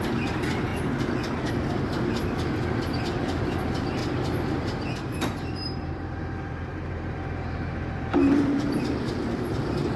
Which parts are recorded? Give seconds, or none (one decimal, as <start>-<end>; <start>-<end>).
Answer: 0.7-2.7; 4.0-4.6